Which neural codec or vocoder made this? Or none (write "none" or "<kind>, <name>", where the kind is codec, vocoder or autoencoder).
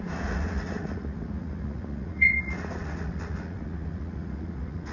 vocoder, Vocos